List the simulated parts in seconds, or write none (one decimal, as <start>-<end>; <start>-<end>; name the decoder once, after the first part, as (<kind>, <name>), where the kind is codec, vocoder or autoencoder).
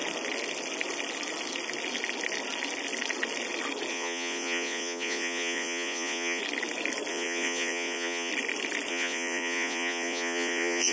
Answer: 3.9-6.4 (vocoder, Vocos); 7.1-8.3; 8.9-10.9